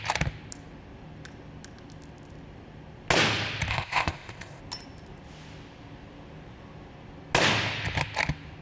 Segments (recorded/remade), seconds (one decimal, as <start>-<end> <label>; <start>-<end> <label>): 0.0-3.7 recorded; 3.7-4.6 remade; 4.6-8.6 recorded